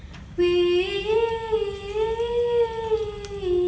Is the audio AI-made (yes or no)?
no